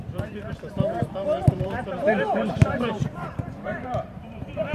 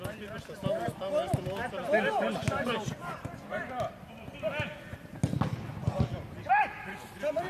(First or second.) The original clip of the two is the second